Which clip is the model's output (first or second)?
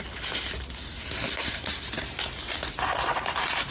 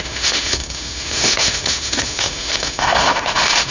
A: second